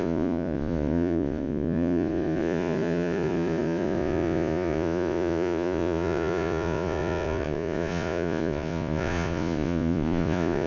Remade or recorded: remade